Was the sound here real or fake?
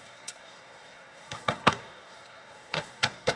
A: fake